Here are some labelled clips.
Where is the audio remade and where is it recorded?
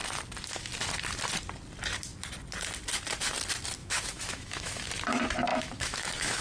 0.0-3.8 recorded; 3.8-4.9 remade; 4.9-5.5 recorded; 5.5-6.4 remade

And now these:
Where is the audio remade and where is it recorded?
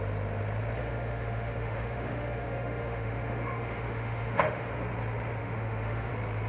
0.0-0.8 recorded; 0.8-4.7 remade; 4.7-5.4 recorded; 5.4-6.1 remade; 6.1-6.5 recorded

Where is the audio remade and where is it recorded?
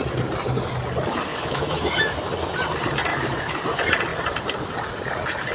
0.0-1.3 recorded; 1.3-2.2 remade; 2.2-3.1 recorded; 3.1-3.6 remade; 3.6-5.5 recorded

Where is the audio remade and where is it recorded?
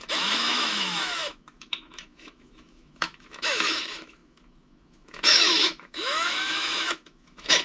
0.0-7.6 remade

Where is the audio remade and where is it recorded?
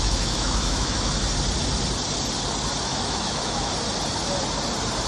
0.0-1.1 remade; 1.1-2.8 recorded; 2.8-3.7 remade; 3.7-5.1 recorded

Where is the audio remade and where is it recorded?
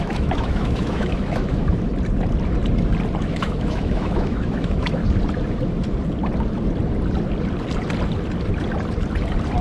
0.0-1.9 remade; 1.9-3.2 recorded; 3.2-5.0 remade; 5.0-9.6 recorded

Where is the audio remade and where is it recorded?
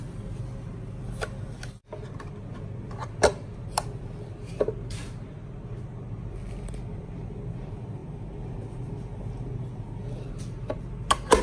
0.0-11.4 recorded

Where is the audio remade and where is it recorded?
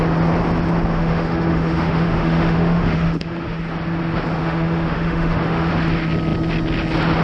0.0-0.9 recorded; 0.9-3.6 remade; 3.6-4.4 recorded; 4.4-5.7 remade; 5.7-7.2 recorded